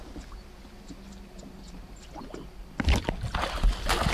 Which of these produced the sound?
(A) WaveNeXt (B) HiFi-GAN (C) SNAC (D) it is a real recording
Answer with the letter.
D